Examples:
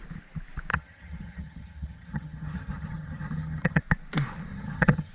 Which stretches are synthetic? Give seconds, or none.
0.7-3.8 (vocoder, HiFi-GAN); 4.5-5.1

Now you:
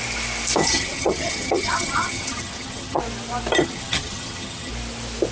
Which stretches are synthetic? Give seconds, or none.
0.6-3.0 (vocoder, HiFi-GAN); 3.6-4.7